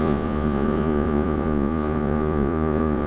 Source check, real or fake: fake